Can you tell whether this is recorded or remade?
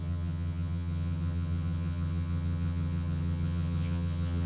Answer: remade